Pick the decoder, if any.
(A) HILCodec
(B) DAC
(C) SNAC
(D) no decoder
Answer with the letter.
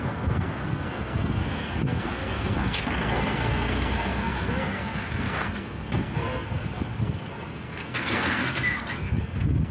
C